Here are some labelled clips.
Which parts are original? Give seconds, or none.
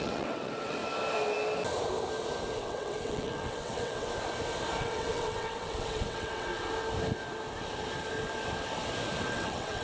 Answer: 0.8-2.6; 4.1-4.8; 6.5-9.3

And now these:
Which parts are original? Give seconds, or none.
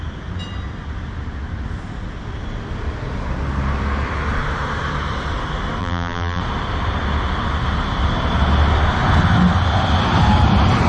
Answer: 0.0-5.8; 6.4-10.9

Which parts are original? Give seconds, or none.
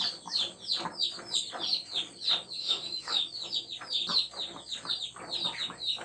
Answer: 0.0-2.6; 3.2-6.0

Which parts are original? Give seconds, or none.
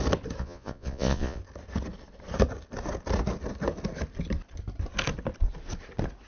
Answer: 0.0-0.4; 1.4-6.3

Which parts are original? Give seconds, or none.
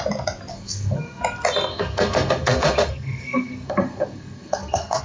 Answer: 0.0-0.5; 1.2-1.7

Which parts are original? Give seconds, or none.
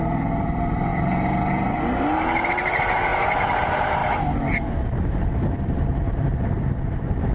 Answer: none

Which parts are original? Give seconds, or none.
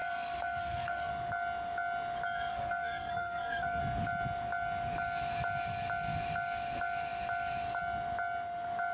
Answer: 1.1-2.5; 3.8-8.9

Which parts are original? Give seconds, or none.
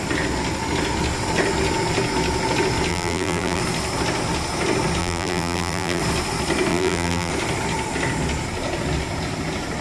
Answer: 0.0-2.9; 3.6-5.0; 6.0-6.7; 7.3-9.8